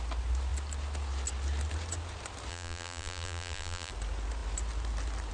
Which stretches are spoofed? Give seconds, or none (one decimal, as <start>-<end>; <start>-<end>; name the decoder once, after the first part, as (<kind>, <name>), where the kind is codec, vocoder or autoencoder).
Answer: 2.5-3.9 (vocoder, BigVGAN v2)